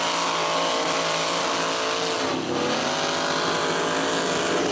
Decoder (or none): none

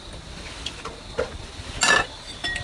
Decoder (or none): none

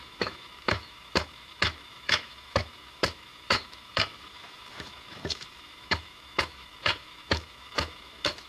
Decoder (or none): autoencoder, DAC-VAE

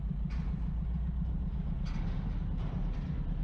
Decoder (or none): none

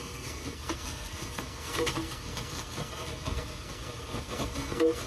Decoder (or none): codec, SNAC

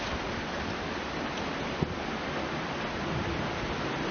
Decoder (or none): none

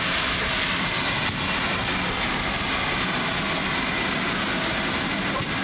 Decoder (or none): none